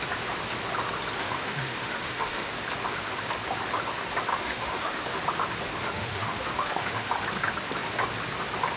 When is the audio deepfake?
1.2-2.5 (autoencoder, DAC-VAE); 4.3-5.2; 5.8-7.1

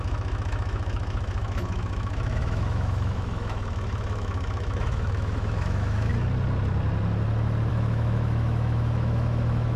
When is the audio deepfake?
0.0-6.1 (autoencoder, DAC-VAE); 7.7-9.8

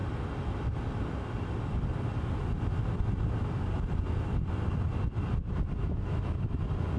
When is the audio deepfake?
5.8-6.6 (autoencoder, DAC-VAE)

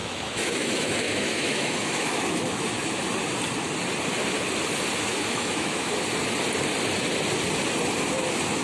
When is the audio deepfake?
0.0-2.7 (autoencoder, DAC-VAE); 5.1-5.9

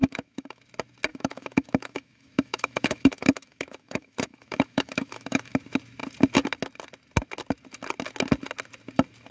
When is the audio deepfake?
0.0-0.6 (autoencoder, DAC-VAE); 1.1-5.5

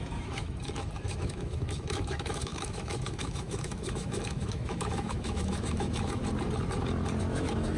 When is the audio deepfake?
0.0-6.2 (autoencoder, DAC-VAE); 7.2-7.8